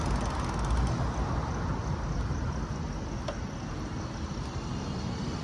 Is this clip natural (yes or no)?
yes